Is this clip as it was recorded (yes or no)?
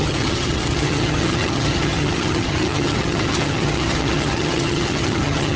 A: no